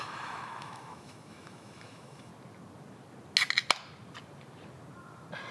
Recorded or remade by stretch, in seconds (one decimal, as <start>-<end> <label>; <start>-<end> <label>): 0.0-2.3 remade; 2.3-5.5 recorded